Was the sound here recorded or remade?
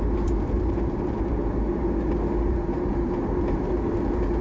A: recorded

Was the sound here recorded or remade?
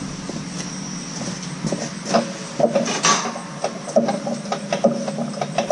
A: recorded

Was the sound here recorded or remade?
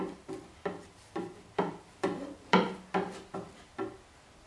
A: recorded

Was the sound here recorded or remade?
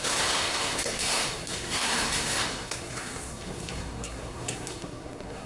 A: remade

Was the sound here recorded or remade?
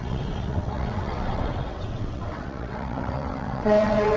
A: remade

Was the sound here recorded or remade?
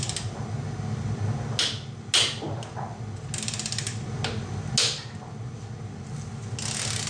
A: recorded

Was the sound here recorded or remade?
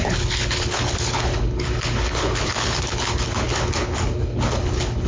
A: remade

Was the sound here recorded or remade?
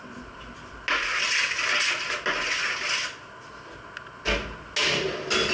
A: recorded